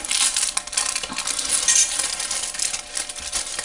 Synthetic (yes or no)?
no